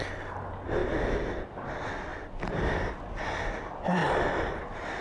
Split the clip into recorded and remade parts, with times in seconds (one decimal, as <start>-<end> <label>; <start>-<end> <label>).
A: 0.0-0.8 recorded; 0.8-1.5 remade; 1.5-4.0 recorded; 4.0-5.0 remade